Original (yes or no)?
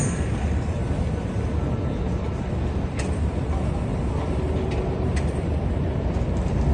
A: yes